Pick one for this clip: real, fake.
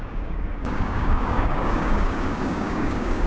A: fake